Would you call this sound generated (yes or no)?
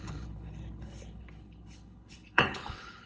yes